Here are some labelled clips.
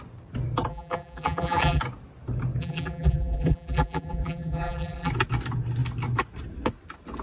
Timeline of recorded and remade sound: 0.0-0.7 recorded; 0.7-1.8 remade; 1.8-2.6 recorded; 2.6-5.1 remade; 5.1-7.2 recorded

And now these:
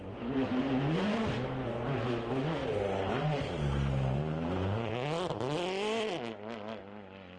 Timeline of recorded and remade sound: 0.0-2.6 recorded; 2.6-4.9 remade; 4.9-7.4 recorded

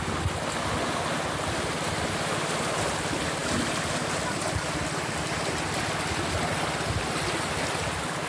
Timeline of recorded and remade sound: 0.0-8.3 recorded

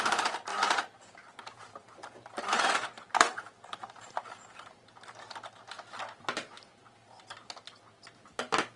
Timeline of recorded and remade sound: 0.0-0.5 recorded; 0.5-4.8 remade; 4.8-8.8 recorded

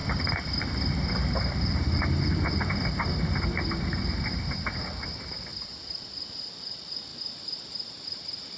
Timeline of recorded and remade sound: 0.0-3.4 remade; 3.4-5.5 recorded; 5.5-6.3 remade; 6.3-8.6 recorded

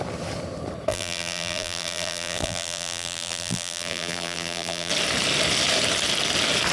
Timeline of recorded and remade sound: 0.0-0.9 recorded; 0.9-4.9 remade; 4.9-6.7 recorded